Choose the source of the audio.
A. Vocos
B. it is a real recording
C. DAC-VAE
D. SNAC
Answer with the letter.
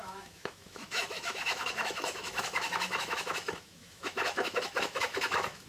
C